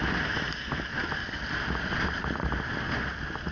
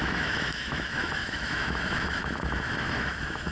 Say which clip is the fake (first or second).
second